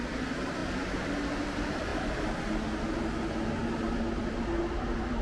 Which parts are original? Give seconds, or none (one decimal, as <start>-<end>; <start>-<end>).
0.0-5.2